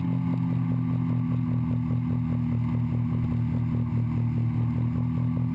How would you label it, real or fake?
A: real